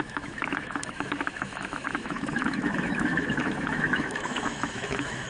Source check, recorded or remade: remade